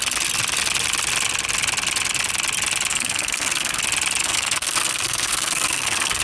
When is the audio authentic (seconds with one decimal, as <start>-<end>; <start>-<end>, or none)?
0.0-2.9; 3.8-4.2